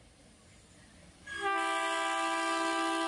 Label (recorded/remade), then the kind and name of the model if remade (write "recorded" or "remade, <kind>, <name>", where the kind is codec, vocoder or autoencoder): recorded